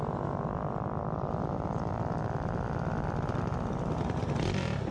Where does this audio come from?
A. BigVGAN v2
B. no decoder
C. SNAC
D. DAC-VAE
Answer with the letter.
B